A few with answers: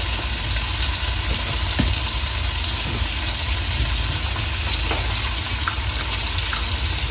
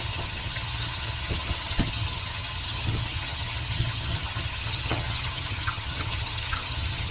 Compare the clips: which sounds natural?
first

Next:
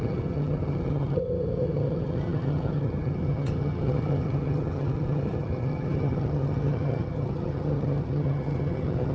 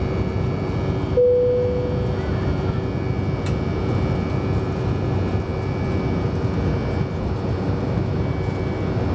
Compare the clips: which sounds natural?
second